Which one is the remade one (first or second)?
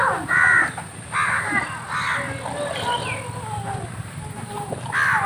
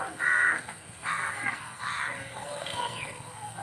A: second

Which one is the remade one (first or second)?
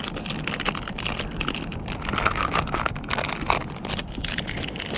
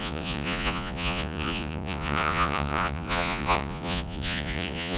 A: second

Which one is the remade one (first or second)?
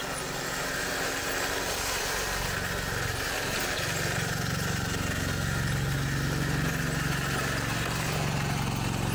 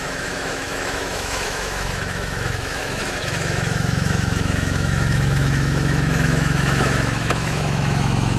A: second